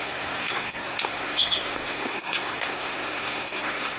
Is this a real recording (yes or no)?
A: no